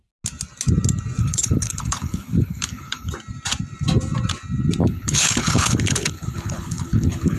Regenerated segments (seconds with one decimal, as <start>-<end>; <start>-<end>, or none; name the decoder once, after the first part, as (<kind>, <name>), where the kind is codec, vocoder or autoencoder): 1.2-3.1 (codec, HILCodec); 4.8-7.4

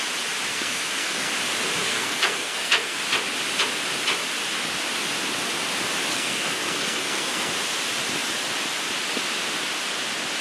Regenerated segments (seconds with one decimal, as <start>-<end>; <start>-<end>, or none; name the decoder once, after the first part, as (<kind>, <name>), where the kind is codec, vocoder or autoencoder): 0.5-1.3 (codec, SNAC); 1.8-3.0; 6.1-7.5